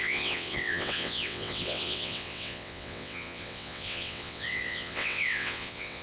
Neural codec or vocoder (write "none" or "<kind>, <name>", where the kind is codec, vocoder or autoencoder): vocoder, WaveNeXt